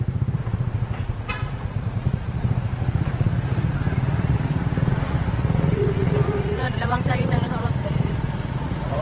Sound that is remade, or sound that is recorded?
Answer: remade